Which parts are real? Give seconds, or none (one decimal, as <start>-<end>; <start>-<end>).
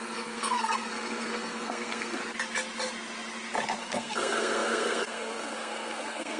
2.2-3.8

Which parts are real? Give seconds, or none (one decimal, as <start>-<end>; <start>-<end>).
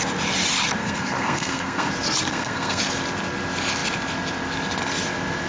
0.0-0.8; 1.9-2.3; 2.8-5.5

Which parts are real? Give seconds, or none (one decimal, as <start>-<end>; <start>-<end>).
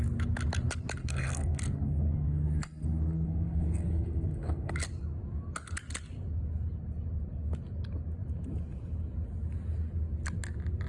0.0-1.0; 4.7-10.9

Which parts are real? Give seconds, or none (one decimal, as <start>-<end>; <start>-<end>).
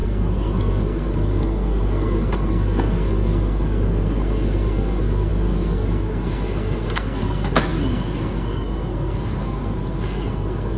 none